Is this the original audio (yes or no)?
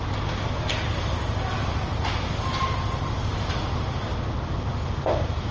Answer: yes